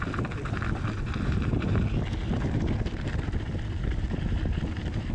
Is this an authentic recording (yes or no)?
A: yes